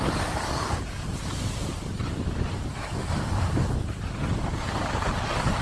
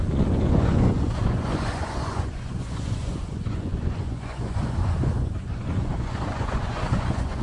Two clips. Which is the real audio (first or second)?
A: first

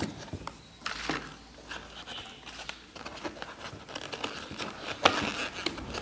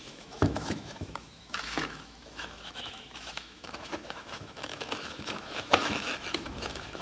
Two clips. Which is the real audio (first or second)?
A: first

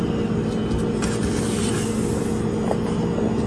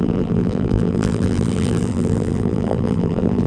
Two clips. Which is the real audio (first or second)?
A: first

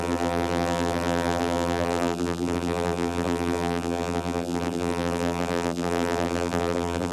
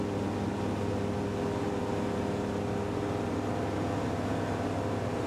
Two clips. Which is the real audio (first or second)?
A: second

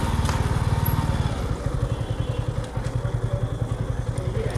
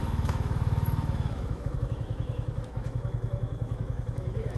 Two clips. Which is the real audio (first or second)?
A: first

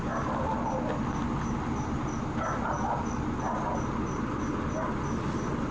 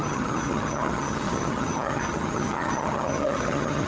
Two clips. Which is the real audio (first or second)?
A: first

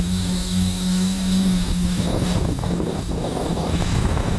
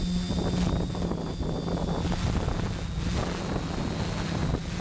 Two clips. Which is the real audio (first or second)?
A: second